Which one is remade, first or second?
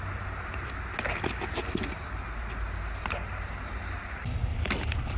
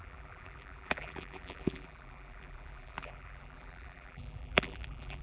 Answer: second